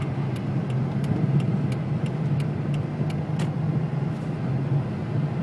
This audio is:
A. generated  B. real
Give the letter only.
B